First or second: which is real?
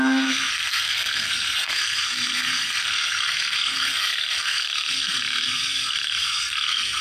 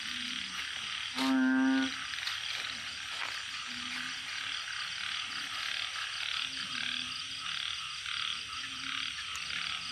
second